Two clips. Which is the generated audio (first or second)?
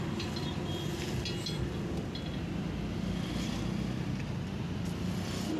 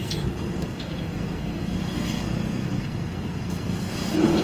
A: second